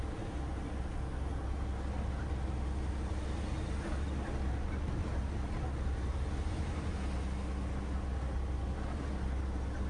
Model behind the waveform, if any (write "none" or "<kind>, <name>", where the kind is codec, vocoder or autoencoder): none